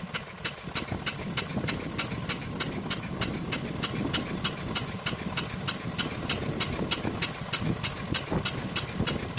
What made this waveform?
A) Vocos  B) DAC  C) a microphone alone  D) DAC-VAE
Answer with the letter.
C